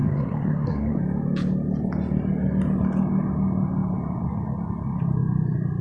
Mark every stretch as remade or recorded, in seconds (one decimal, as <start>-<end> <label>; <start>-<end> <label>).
0.0-1.0 remade; 1.0-5.8 recorded